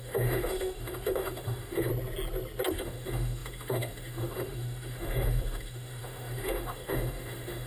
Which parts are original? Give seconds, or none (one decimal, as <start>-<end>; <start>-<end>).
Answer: 1.9-2.7